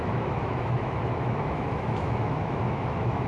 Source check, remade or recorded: remade